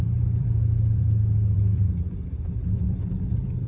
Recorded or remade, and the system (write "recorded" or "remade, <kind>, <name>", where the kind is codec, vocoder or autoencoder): remade, vocoder, BigVGAN v2